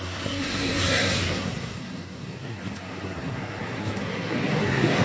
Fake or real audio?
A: fake